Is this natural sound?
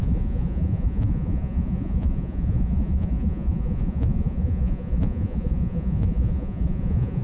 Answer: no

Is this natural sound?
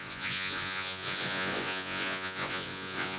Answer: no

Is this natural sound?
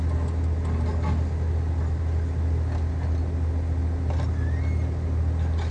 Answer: yes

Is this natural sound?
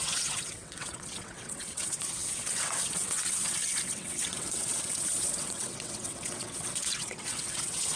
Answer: no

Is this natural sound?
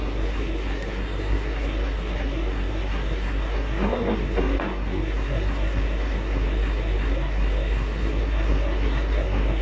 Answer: no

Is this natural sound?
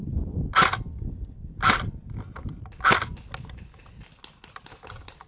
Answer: yes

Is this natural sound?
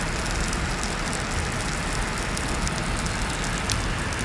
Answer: yes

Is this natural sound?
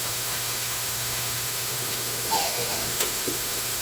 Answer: no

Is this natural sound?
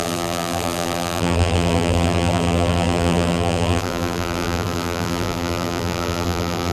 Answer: no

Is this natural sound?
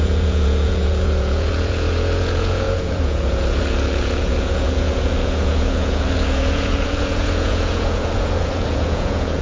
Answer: no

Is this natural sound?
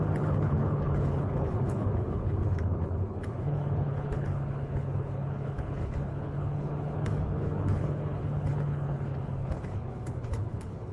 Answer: no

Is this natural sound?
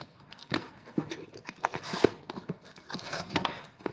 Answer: no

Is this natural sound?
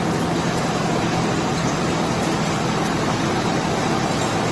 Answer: yes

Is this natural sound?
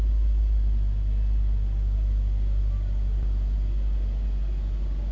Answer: yes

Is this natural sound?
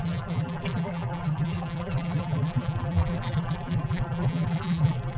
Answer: no